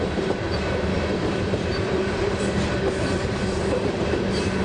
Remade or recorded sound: remade